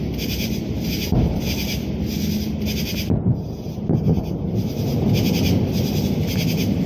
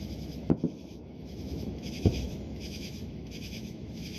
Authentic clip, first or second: first